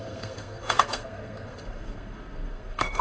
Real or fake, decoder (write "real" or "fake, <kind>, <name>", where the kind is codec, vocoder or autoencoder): fake, codec, SNAC